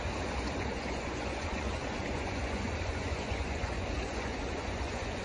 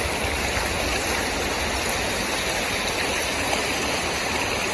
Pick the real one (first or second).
second